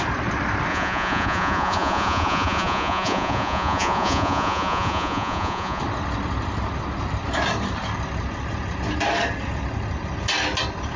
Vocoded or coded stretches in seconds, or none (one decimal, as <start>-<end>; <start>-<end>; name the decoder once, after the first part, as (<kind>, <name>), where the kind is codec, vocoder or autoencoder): 0.7-5.8 (vocoder, Vocos)